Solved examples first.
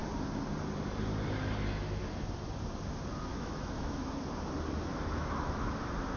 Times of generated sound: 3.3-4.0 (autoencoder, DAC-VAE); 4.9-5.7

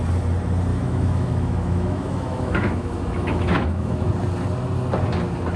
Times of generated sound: 0.7-4.1 (autoencoder, DAC-VAE)

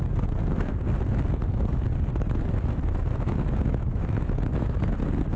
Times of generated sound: 2.1-5.0 (autoencoder, DAC-VAE)

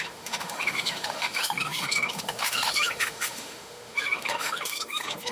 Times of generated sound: 0.0-5.3 (autoencoder, DAC-VAE)